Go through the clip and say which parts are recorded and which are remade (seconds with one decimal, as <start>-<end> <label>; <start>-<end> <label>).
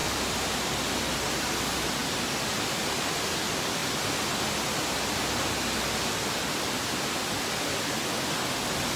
0.0-0.8 remade; 0.8-9.0 recorded